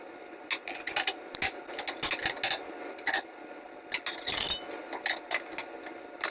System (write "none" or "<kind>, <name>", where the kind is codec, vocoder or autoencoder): none